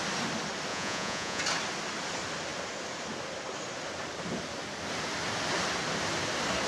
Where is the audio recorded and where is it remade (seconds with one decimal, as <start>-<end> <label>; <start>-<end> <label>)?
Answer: 0.0-0.7 recorded; 0.7-1.4 remade; 1.4-6.7 recorded